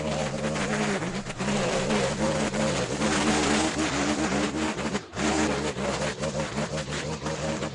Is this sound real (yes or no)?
yes